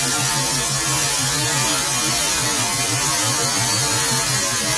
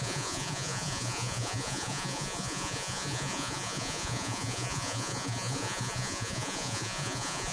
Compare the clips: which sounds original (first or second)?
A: first